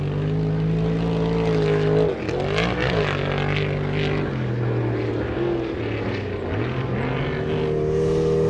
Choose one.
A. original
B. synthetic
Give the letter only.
A